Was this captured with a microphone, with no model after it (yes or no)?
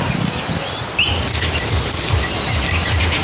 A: yes